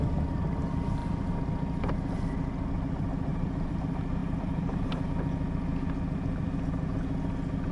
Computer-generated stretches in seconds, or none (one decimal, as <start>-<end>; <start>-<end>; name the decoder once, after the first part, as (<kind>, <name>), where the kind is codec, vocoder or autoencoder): 3.3-3.8 (vocoder, BigVGAN v2); 4.2-5.1